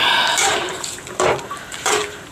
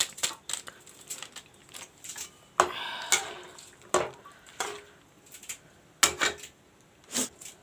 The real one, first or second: second